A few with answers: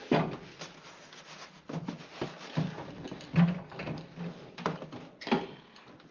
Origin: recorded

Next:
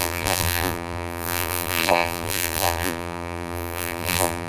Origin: remade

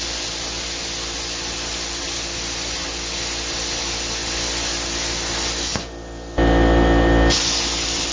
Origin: recorded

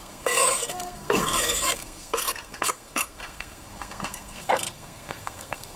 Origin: remade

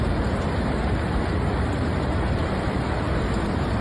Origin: remade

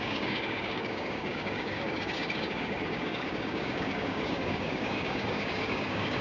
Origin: remade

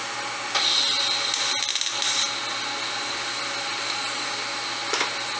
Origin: recorded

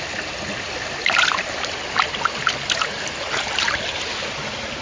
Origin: recorded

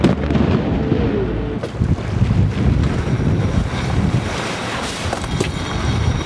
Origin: recorded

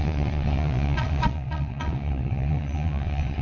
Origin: remade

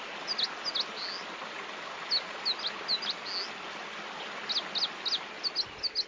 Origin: recorded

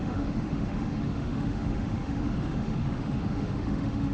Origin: remade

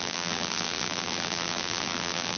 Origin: remade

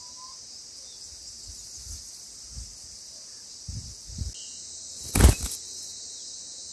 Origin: recorded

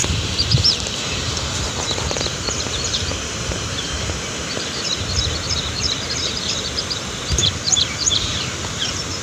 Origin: remade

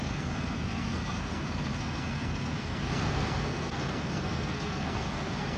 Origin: remade